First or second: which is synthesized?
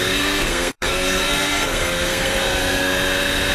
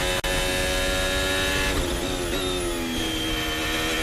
first